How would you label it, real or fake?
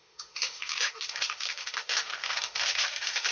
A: fake